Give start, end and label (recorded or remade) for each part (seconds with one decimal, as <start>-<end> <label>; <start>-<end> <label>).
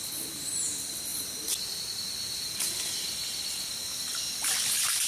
0.0-5.1 recorded